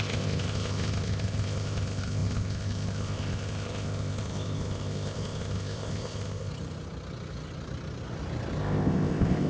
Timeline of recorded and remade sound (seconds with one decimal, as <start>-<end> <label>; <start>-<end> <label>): 0.0-6.5 remade; 6.5-8.6 recorded; 8.6-9.5 remade